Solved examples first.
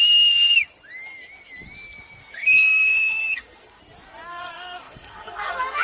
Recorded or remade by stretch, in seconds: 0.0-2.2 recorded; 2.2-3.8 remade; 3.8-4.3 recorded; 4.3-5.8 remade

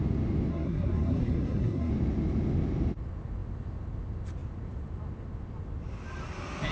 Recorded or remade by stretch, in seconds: 0.0-0.5 recorded; 0.5-1.9 remade; 1.9-6.7 recorded

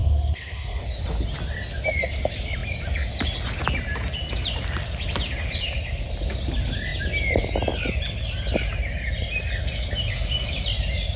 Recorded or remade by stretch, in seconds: 0.0-0.8 remade; 0.8-11.2 recorded

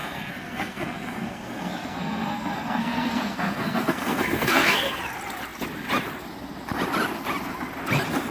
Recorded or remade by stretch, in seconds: 0.0-5.0 remade; 5.0-8.3 recorded